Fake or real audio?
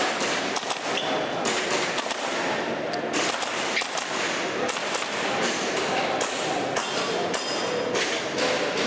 real